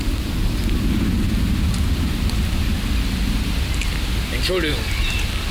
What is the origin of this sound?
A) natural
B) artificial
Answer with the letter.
A